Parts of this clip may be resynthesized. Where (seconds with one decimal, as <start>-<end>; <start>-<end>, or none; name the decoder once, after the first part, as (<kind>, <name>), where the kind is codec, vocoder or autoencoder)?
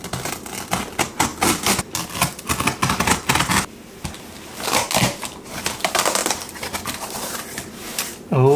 6.2-7.3 (vocoder, BigVGAN v2)